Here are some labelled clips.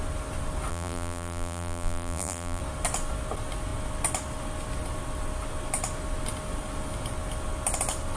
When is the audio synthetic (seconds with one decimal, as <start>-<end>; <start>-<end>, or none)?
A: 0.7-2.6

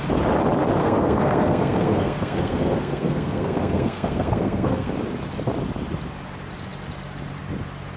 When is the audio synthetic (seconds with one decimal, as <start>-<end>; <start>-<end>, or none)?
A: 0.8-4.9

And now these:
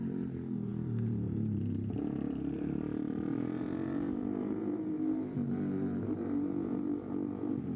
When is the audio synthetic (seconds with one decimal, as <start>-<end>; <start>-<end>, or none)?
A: 0.0-7.8

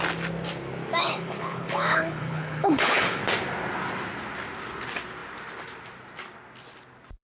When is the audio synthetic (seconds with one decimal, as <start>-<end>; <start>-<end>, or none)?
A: 1.0-3.2